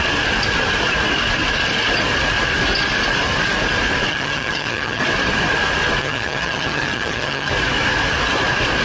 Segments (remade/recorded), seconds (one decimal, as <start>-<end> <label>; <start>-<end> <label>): 0.0-4.1 recorded; 4.1-5.0 remade; 5.0-6.0 recorded; 6.0-7.5 remade; 7.5-8.8 recorded